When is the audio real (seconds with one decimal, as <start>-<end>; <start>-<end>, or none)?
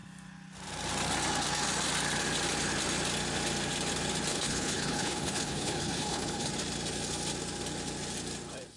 0.0-4.3; 6.5-8.8